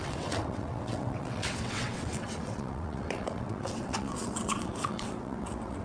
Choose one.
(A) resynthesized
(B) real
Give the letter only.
A